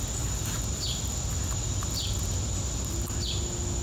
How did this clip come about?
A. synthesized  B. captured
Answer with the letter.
B